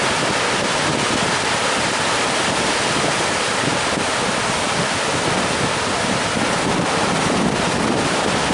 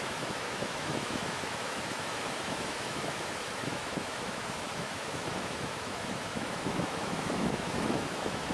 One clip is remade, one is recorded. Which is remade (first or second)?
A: second